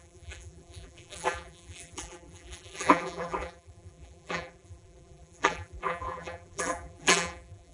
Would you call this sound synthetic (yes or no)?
yes